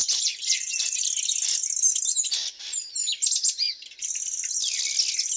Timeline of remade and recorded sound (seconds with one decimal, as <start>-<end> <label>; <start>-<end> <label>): 0.0-1.1 remade; 1.1-5.4 recorded